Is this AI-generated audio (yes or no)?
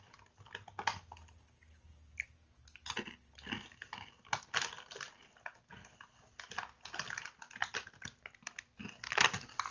no